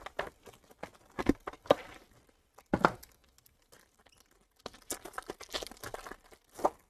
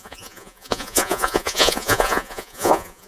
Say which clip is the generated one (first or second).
second